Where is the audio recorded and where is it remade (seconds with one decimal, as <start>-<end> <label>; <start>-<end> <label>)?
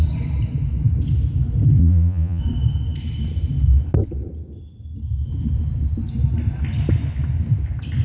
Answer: 0.0-1.8 recorded; 1.8-2.4 remade; 2.4-8.0 recorded